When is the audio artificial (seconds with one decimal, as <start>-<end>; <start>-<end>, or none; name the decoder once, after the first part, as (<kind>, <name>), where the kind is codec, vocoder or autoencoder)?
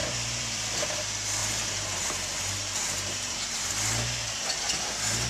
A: 0.0-0.6 (vocoder, BigVGAN v2); 1.4-3.7